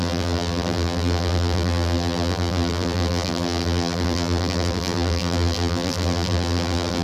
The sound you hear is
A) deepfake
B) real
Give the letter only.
A